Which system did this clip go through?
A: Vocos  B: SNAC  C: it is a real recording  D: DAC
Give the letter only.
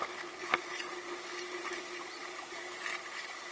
C